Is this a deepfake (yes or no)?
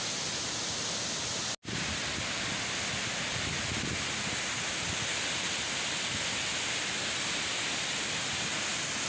no